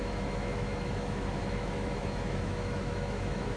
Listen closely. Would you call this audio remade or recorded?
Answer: remade